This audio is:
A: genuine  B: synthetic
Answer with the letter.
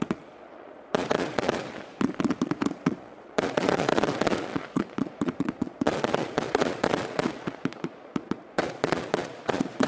B